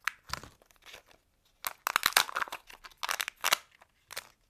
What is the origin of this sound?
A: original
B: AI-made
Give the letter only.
A